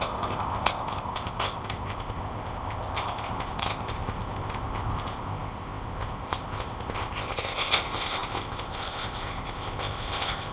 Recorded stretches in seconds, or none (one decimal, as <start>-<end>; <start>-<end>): none